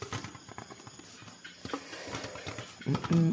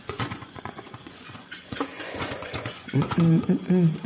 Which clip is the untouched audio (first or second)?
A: first